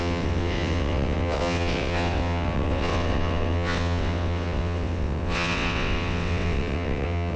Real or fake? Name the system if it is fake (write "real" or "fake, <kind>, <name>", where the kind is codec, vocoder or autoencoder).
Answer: fake, vocoder, WaveNeXt